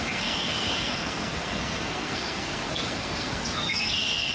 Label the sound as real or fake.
fake